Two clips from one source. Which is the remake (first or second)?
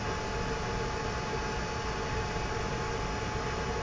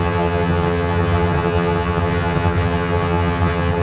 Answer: second